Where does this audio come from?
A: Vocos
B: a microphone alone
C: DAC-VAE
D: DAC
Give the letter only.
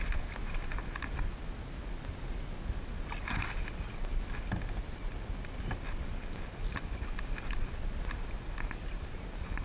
B